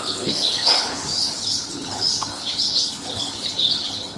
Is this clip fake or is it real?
fake